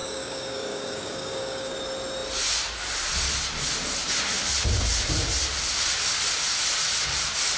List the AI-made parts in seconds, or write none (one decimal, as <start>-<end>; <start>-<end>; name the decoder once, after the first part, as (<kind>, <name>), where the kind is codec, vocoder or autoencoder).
0.0-1.7 (codec, DAC)